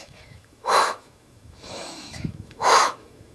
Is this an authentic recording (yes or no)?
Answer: no